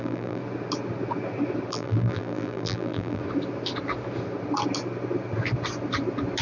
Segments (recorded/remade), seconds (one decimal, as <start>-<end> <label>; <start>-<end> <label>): 0.0-0.4 remade; 0.4-1.7 recorded; 1.7-3.2 remade; 3.2-6.4 recorded